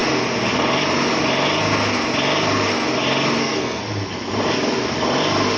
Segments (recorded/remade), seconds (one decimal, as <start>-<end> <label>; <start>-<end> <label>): 0.0-3.4 recorded; 3.4-3.8 remade; 3.8-5.6 recorded